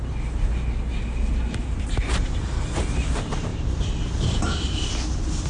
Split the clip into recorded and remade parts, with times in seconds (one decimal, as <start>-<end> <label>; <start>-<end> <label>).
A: 0.0-3.5 recorded; 3.5-4.9 remade; 4.9-5.5 recorded